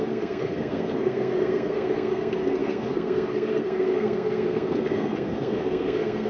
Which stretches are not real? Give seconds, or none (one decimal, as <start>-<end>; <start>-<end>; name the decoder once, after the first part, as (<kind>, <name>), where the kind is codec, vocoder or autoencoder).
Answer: 0.0-6.3 (codec, SNAC)